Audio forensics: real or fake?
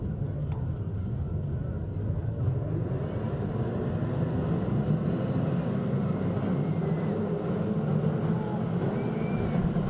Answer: real